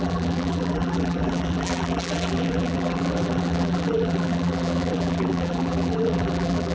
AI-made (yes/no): yes